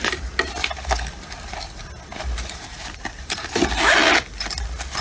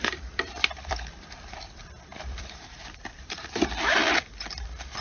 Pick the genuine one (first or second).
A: first